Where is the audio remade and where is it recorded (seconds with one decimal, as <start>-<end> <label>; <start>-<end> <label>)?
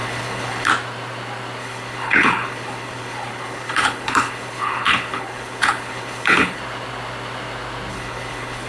0.0-0.7 remade; 0.7-1.6 recorded; 1.6-6.6 remade; 6.6-7.9 recorded; 7.9-8.7 remade